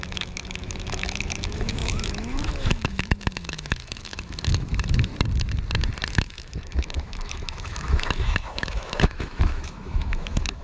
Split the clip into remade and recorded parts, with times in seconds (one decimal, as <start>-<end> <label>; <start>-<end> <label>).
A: 0.0-5.1 remade; 5.1-6.1 recorded; 6.1-10.6 remade